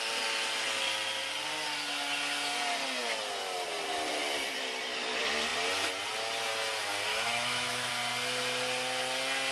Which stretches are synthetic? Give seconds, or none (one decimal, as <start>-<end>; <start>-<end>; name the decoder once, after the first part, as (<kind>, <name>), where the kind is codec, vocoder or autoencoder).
7.1-7.9 (autoencoder, DAC-VAE)